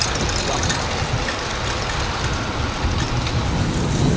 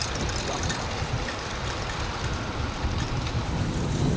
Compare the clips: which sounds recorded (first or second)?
first